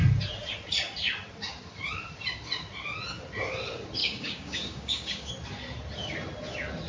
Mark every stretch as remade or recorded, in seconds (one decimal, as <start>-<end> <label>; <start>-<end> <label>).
0.0-4.0 recorded; 4.0-5.3 remade; 5.3-6.9 recorded